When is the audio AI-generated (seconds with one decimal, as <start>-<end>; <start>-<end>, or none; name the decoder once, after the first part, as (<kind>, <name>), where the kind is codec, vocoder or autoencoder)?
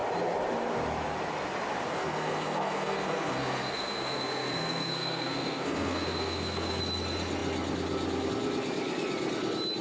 1.9-6.8 (codec, SNAC)